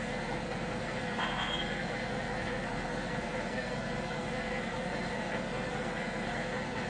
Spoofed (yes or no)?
yes